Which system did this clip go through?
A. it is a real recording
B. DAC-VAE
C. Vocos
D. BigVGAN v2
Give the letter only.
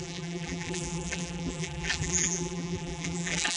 D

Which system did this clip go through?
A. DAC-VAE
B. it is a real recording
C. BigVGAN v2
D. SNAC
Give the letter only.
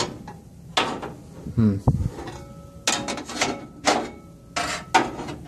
B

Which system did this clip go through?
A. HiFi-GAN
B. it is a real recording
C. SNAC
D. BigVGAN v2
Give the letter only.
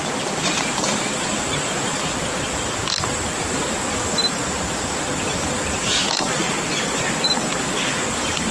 B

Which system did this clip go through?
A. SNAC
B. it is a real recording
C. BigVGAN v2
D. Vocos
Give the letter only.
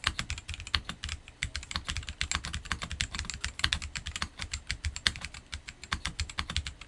B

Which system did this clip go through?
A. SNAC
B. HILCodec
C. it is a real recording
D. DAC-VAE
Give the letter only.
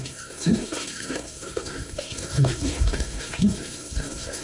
A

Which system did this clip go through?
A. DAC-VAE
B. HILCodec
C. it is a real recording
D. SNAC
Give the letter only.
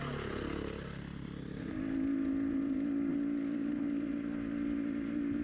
C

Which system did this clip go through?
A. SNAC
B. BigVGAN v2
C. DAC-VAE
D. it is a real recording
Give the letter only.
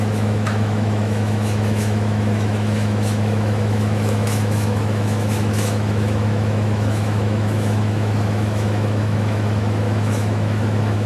C